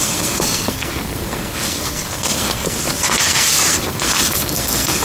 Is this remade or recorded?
remade